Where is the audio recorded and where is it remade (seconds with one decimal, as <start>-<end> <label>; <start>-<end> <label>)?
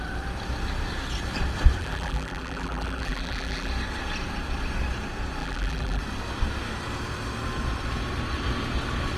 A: 0.0-1.8 recorded; 1.8-3.7 remade; 3.7-5.4 recorded; 5.4-6.0 remade; 6.0-9.2 recorded